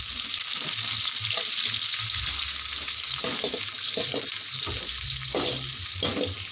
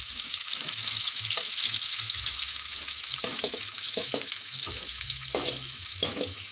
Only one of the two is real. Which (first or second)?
first